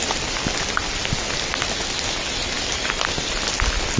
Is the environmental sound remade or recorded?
recorded